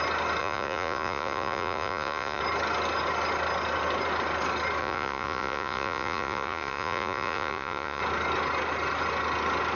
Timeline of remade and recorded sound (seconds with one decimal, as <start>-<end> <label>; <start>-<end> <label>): 0.0-0.4 recorded; 0.4-2.4 remade; 2.4-4.8 recorded; 4.8-8.0 remade; 8.0-9.7 recorded